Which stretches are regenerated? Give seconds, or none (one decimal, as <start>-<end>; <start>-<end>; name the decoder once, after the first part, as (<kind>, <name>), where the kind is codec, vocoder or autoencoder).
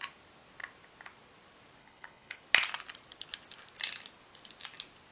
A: 1.8-2.4 (codec, HILCodec)